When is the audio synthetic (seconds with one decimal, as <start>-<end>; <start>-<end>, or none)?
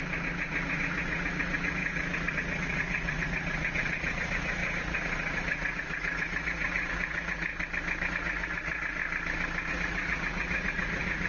0.0-7.5; 8.1-9.0; 9.7-11.3